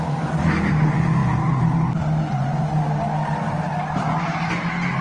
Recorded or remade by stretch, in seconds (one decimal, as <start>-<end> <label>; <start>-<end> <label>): 0.0-5.0 recorded